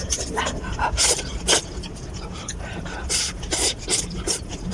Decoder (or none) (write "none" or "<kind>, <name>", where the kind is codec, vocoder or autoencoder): vocoder, BigVGAN v2